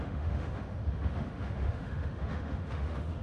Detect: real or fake fake